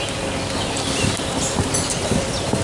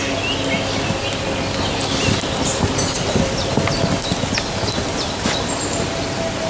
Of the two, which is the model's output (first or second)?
first